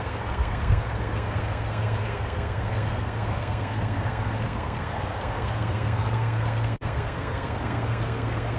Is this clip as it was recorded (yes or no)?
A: no